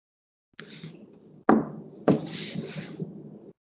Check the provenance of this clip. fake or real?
real